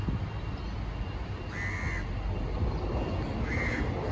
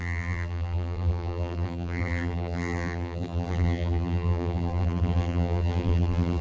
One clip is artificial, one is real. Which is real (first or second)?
first